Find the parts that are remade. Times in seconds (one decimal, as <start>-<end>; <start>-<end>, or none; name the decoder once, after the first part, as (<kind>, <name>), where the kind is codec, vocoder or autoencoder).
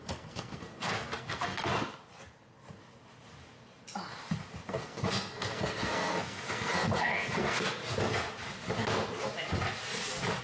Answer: 0.0-1.7 (codec, SNAC); 4.7-7.8